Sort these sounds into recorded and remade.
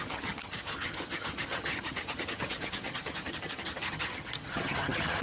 remade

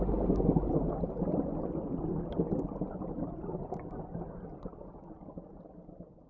recorded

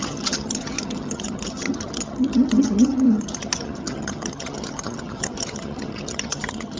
remade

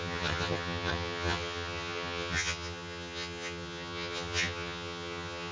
remade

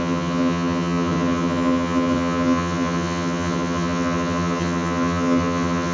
remade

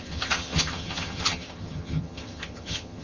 remade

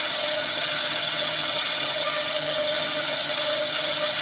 remade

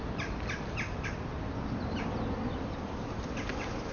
recorded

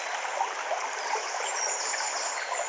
recorded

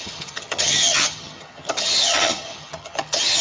remade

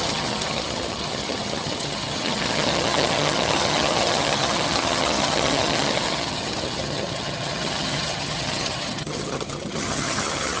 remade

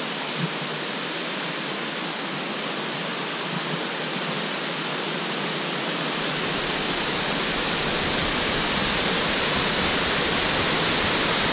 recorded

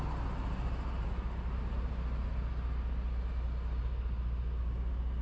recorded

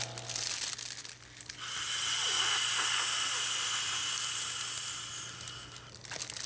recorded